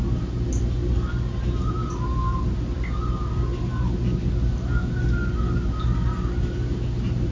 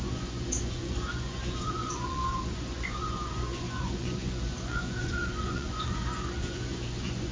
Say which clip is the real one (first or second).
first